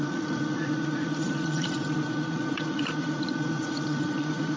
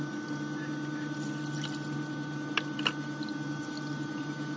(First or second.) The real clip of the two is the second